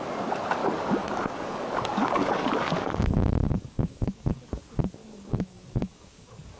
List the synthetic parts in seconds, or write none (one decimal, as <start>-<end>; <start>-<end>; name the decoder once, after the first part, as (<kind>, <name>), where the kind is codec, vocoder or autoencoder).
0.6-4.6 (codec, DAC); 5.0-6.6